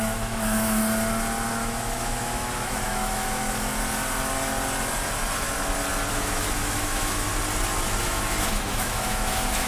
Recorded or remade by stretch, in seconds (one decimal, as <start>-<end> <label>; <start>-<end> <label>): 0.0-0.8 remade; 0.8-1.5 recorded; 1.5-3.7 remade; 3.7-6.1 recorded; 6.1-7.3 remade; 7.3-8.0 recorded; 8.0-9.7 remade